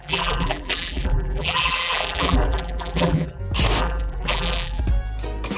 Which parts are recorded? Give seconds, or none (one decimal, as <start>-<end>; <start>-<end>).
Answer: 3.4-3.8; 4.8-5.6